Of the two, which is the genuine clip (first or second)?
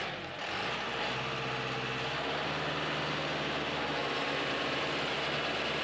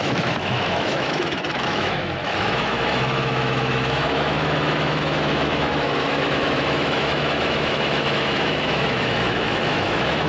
first